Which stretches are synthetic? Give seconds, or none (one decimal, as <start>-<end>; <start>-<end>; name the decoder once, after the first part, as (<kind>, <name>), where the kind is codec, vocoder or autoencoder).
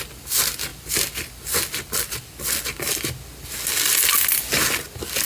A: none